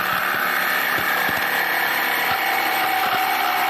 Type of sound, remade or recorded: recorded